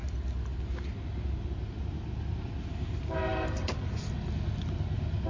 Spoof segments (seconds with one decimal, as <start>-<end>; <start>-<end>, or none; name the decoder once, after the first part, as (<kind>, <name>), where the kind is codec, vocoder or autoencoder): 3.3-3.9 (vocoder, BigVGAN v2)